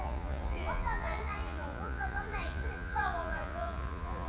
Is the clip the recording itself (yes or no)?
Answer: no